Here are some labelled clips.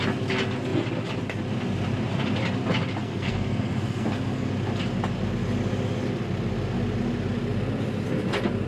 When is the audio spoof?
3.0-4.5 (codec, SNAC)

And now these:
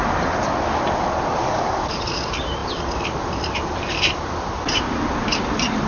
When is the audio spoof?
1.4-2.0 (codec, DAC)

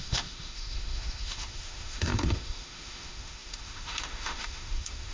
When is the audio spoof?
0.0-5.1 (autoencoder, DAC-VAE)

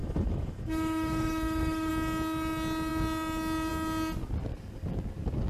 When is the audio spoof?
0.0-1.9 (autoencoder, DAC-VAE)

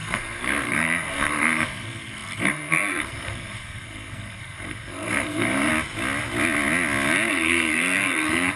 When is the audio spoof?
0.0-5.7 (codec, SNAC); 7.3-8.6

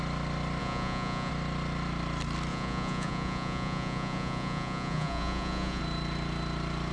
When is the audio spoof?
0.6-1.3 (vocoder, Vocos); 2.5-5.8